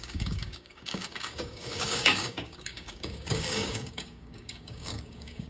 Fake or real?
fake